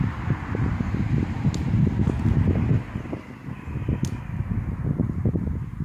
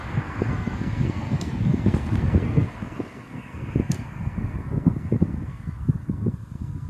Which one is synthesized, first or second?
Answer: second